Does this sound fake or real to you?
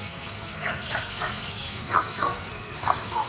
fake